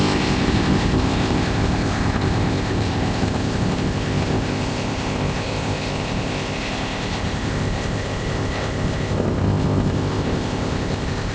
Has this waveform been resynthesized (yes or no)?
yes